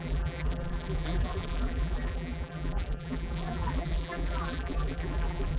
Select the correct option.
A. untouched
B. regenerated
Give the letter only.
B